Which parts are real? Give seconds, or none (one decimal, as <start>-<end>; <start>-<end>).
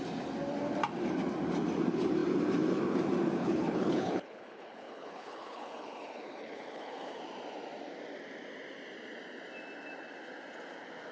0.0-3.4; 7.2-11.1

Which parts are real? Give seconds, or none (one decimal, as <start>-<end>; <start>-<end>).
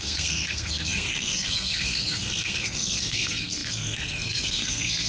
none